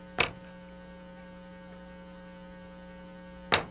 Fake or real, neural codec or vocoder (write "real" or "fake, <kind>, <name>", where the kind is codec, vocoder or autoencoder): real